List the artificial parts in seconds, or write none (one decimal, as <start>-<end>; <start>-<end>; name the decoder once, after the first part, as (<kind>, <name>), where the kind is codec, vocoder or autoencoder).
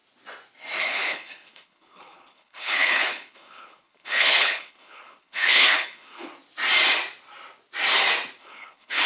0.8-6.3 (codec, HILCodec); 8.4-9.1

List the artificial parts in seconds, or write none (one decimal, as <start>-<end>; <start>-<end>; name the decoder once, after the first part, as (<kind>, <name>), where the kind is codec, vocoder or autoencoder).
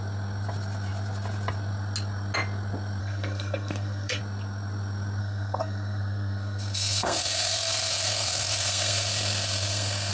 3.0-4.2 (codec, SNAC); 5.2-10.1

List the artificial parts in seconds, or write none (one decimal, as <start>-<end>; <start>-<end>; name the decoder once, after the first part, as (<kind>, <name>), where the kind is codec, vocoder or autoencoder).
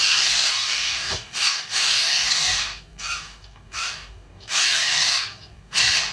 0.0-6.1 (codec, DAC)